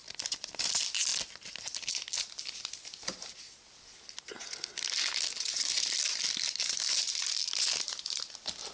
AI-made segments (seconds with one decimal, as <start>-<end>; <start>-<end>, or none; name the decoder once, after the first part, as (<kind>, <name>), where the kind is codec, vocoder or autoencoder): none